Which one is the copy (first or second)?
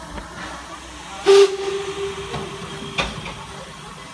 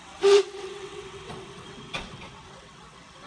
second